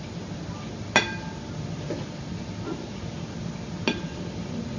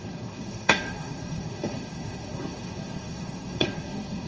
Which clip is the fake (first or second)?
second